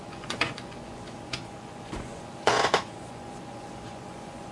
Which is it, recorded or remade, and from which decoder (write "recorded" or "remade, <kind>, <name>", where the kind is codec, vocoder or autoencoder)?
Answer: remade, vocoder, Vocos